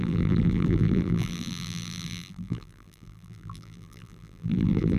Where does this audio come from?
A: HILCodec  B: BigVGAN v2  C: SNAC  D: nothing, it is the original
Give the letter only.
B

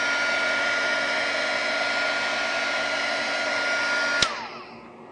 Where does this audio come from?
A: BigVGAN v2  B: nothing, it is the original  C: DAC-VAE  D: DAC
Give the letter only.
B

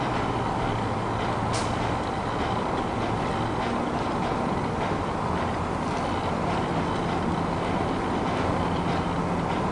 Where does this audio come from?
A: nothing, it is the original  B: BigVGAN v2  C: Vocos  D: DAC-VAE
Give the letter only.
A